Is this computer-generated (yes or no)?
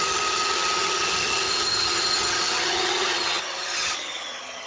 yes